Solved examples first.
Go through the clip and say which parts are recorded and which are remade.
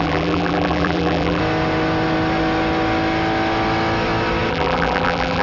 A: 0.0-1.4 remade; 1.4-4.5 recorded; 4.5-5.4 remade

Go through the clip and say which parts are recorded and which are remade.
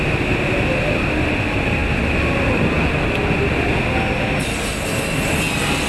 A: 0.0-5.9 recorded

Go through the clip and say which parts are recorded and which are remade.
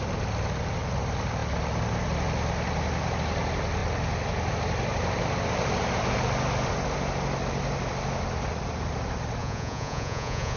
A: 0.0-9.4 recorded; 9.4-10.6 remade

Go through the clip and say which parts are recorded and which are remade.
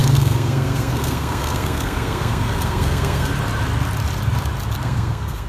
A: 0.0-3.3 remade; 3.3-4.8 recorded; 4.8-5.5 remade